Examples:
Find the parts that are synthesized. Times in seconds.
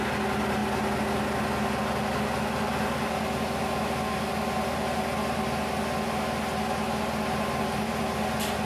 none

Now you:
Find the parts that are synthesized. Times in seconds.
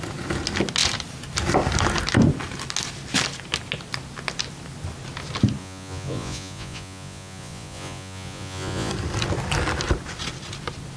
5.6-8.9 (vocoder, Vocos)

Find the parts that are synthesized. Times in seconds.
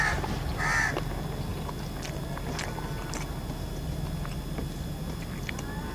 none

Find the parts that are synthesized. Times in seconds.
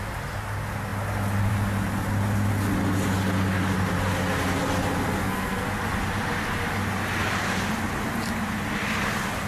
5.2-5.7 (codec, SNAC)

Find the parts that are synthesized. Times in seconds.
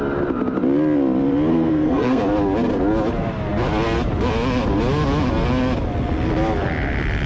1.5-2.2 (codec, SNAC)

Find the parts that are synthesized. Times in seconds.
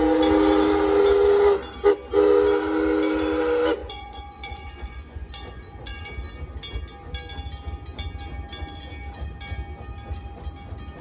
3.8-6.1 (vocoder, Vocos)